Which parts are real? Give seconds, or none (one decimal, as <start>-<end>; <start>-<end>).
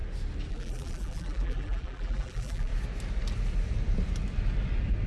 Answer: 0.0-0.5; 2.7-5.1